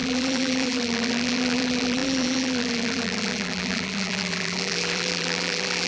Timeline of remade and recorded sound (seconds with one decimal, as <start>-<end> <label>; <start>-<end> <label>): 0.0-5.9 remade